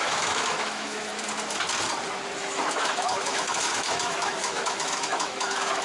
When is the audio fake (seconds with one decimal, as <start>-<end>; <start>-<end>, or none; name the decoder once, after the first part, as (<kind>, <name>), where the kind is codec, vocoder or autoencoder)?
0.0-1.1 (autoencoder, DAC-VAE); 2.4-5.8